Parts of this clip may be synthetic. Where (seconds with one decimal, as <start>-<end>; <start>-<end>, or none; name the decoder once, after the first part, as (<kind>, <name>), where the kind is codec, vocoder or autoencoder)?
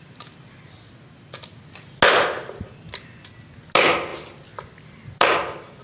none